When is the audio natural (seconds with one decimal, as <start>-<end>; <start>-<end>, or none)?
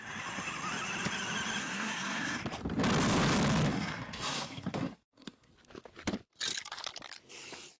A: 0.0-1.6; 2.4-3.7; 5.5-7.8